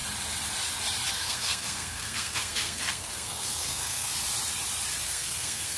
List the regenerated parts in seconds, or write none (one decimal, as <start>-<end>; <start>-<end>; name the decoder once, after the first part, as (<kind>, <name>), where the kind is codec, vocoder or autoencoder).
1.1-4.1 (codec, SNAC); 5.0-5.8